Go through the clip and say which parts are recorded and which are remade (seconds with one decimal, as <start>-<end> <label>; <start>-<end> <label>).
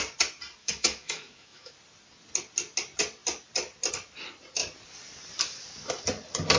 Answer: 0.0-0.6 recorded; 0.6-1.7 remade; 1.7-6.6 recorded